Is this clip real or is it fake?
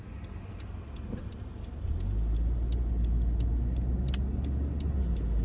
real